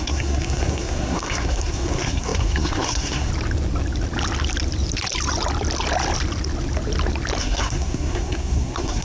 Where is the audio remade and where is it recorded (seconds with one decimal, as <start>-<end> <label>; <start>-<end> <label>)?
0.0-3.3 remade; 3.3-7.4 recorded; 7.4-9.0 remade